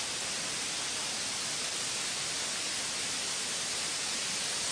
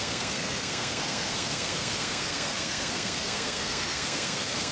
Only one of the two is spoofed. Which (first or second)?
second